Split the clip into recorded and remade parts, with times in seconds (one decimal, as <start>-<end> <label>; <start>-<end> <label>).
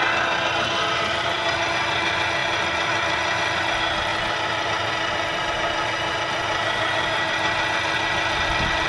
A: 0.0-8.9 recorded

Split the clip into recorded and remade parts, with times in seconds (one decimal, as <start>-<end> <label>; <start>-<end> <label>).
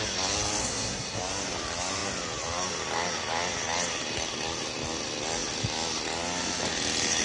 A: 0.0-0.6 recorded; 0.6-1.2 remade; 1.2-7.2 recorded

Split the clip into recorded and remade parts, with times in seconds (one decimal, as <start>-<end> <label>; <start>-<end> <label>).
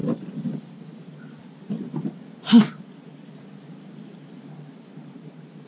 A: 0.0-5.7 recorded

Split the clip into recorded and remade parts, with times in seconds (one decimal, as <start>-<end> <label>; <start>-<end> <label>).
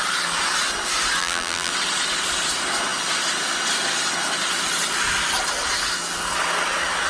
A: 0.0-1.2 recorded; 1.2-1.7 remade; 1.7-7.1 recorded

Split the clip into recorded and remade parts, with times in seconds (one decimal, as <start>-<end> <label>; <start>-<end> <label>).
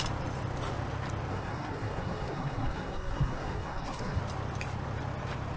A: 0.0-1.3 recorded; 1.3-4.2 remade; 4.2-5.6 recorded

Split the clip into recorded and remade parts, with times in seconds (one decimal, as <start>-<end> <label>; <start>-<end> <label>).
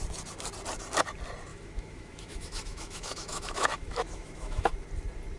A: 0.0-1.5 recorded; 1.5-4.7 remade; 4.7-5.4 recorded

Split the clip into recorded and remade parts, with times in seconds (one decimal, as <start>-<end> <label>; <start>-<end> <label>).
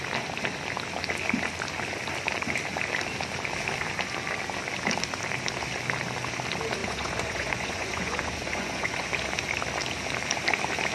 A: 0.0-6.8 recorded; 6.8-9.1 remade; 9.1-10.9 recorded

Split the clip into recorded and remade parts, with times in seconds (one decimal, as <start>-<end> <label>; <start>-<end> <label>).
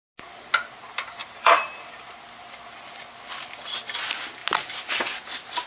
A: 0.0-1.2 recorded; 1.2-1.8 remade; 1.8-5.7 recorded